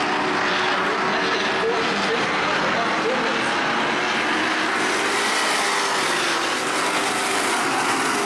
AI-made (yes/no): no